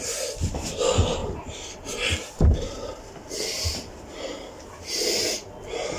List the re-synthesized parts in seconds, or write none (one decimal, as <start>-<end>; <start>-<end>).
none